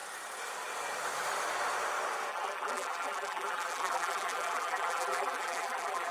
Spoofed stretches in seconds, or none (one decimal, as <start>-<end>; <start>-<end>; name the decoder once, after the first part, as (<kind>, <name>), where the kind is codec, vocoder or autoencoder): 2.3-6.1 (vocoder, BigVGAN v2)